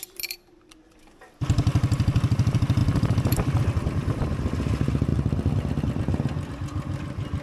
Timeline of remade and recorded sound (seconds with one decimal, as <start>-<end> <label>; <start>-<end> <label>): 0.0-7.4 recorded